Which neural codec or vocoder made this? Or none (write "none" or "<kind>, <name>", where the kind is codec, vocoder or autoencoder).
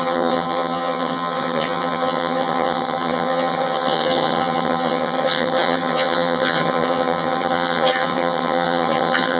vocoder, HiFi-GAN